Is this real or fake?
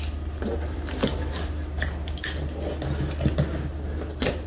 real